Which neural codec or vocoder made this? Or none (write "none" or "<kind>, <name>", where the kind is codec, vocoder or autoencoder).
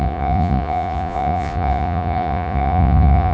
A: vocoder, Vocos